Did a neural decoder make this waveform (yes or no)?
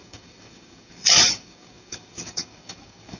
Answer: yes